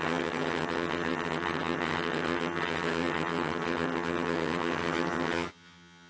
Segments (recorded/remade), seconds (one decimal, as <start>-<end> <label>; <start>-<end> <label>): 0.0-6.1 remade